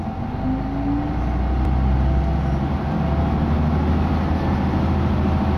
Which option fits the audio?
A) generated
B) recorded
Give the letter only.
B